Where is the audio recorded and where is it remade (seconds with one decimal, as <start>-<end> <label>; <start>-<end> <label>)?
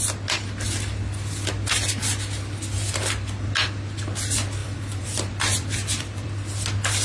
0.0-4.6 recorded; 4.6-6.3 remade; 6.3-7.0 recorded